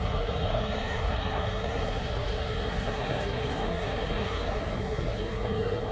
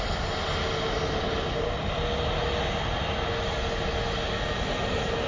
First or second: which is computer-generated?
first